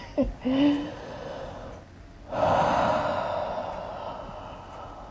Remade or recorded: recorded